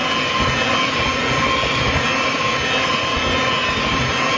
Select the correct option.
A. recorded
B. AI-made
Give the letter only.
A